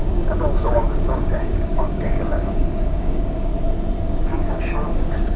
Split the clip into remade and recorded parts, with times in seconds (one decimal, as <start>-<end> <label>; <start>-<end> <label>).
0.0-3.5 remade; 3.5-4.0 recorded; 4.0-5.4 remade